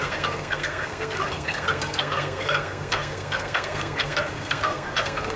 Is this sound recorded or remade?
remade